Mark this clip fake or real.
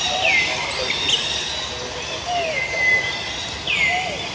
real